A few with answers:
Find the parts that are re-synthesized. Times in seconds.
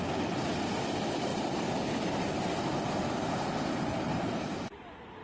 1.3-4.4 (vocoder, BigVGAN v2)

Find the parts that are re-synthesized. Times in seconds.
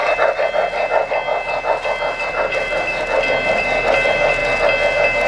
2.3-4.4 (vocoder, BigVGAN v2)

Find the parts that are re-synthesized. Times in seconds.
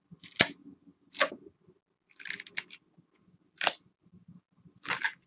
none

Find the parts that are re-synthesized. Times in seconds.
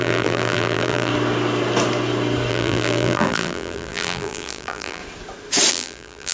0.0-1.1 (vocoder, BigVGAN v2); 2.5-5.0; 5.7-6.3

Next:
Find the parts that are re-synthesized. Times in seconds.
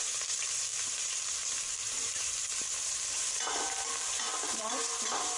0.0-5.4 (vocoder, BigVGAN v2)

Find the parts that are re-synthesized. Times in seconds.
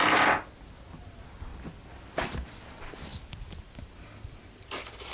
none